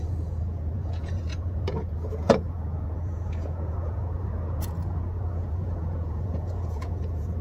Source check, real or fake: fake